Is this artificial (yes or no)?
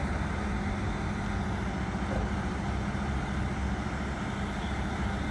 no